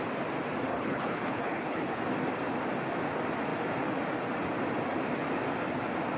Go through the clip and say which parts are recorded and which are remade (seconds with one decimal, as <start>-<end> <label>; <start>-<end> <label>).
0.0-0.7 recorded; 0.7-2.0 remade; 2.0-6.2 recorded